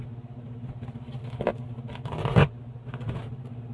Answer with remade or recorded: recorded